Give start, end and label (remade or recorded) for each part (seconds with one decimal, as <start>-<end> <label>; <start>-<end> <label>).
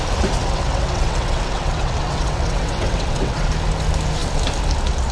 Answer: 0.0-0.4 recorded; 0.4-3.5 remade; 3.5-5.1 recorded